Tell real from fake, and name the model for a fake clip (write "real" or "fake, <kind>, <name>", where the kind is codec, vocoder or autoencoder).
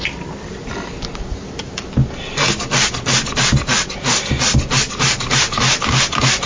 real